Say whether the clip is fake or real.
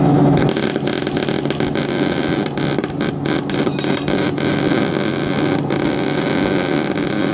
real